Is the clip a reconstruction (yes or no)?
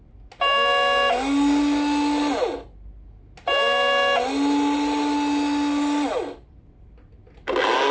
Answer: no